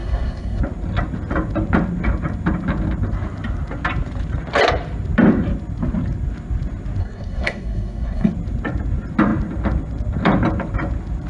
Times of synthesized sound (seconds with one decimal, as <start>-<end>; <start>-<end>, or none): 0.0-0.6; 7.0-8.3